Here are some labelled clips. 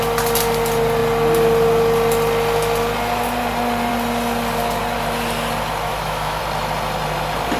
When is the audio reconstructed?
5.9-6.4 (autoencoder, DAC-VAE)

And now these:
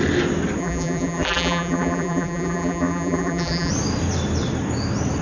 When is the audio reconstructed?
0.6-3.7 (vocoder, BigVGAN v2)

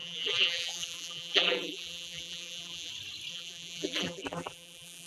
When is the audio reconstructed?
0.0-2.9 (vocoder, BigVGAN v2); 3.3-5.1

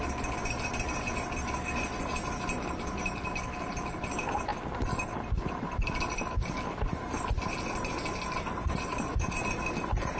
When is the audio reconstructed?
4.5-7.9 (vocoder, BigVGAN v2)

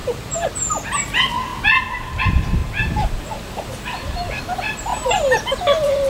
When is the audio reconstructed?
0.0-0.5 (vocoder, BigVGAN v2); 2.6-4.4; 4.9-6.1

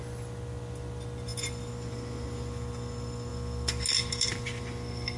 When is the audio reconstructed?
none

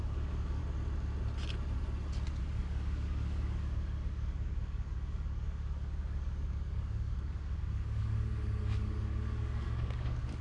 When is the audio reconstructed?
0.0-0.6 (codec, DAC); 2.4-10.4

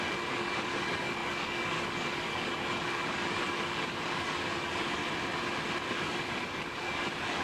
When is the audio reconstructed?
0.0-5.0 (codec, DAC); 5.9-7.4